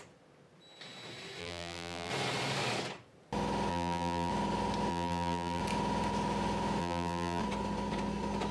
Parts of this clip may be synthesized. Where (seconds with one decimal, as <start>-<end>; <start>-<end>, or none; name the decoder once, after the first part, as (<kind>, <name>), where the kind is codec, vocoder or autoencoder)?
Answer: 1.4-2.1 (vocoder, BigVGAN v2); 3.7-4.3; 4.9-5.6; 6.8-7.4